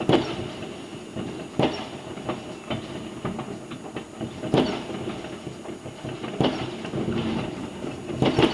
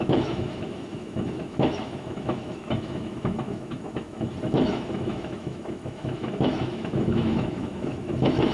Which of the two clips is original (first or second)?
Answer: first